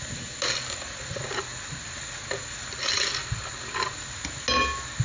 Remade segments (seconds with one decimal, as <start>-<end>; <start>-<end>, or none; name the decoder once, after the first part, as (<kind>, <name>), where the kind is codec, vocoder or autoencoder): none